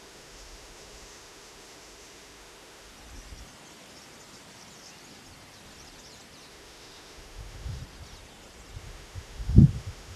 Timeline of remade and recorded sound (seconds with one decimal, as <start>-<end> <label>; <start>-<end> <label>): 0.0-2.9 remade; 2.9-6.5 recorded; 6.5-7.8 remade; 7.8-8.8 recorded; 8.8-10.2 remade